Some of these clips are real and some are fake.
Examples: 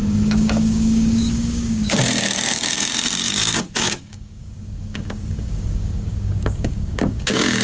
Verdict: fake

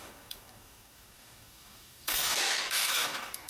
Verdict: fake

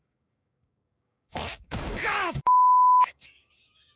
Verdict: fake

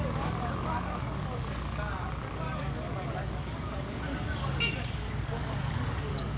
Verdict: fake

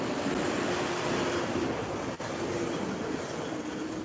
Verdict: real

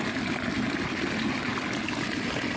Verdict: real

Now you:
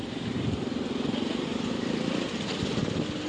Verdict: real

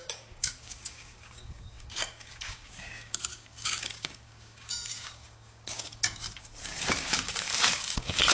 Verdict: fake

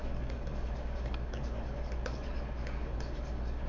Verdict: fake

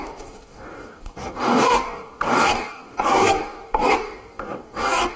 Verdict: fake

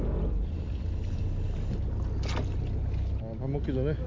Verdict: real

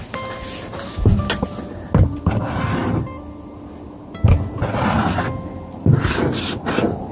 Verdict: real